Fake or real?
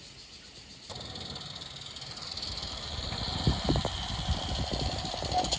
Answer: real